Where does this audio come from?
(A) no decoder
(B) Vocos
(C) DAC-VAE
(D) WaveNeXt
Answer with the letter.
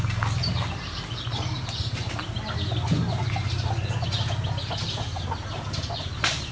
A